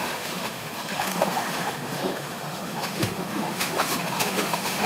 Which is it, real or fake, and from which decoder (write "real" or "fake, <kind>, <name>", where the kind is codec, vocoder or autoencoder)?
fake, autoencoder, DAC-VAE